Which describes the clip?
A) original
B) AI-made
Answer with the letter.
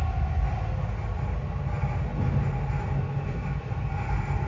A